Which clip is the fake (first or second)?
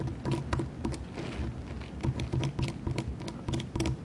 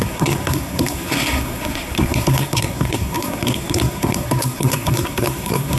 second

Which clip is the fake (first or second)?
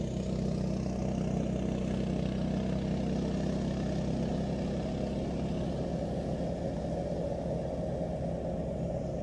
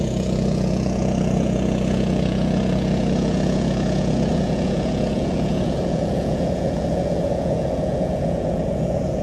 second